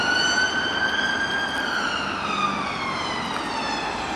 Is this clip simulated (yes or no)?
no